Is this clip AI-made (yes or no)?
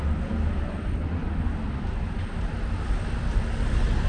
no